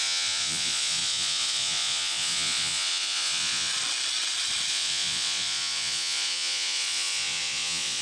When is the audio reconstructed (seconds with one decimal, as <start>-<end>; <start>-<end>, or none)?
0.0-3.7; 4.7-8.0